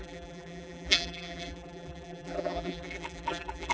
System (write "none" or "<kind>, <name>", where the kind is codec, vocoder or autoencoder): vocoder, BigVGAN v2